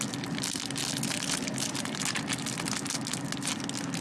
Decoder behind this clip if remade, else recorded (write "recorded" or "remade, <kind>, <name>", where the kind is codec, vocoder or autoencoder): recorded